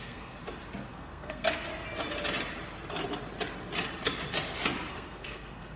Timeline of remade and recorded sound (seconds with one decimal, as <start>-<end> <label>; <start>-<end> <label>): 0.0-0.4 remade; 0.4-0.9 recorded; 0.9-1.7 remade; 1.7-4.9 recorded; 4.9-5.8 remade